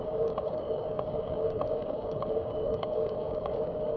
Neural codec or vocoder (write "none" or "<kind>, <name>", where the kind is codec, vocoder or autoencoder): codec, DAC